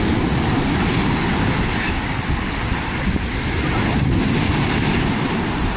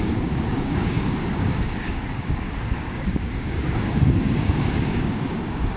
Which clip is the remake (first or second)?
second